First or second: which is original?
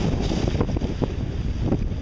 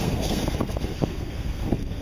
first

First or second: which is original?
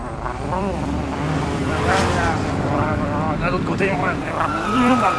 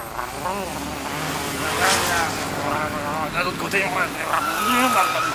second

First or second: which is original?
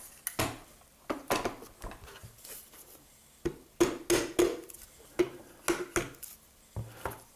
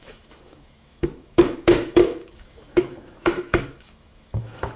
first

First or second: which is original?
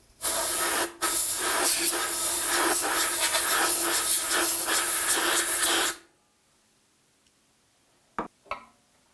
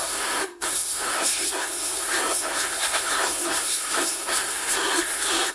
first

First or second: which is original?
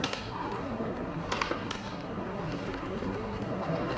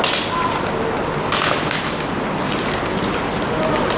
second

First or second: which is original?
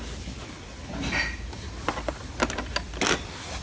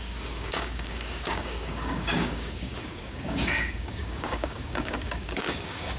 first